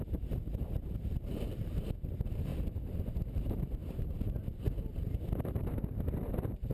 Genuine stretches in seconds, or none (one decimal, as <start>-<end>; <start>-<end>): 2.5-3.1